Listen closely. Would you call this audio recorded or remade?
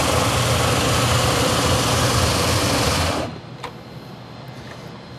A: recorded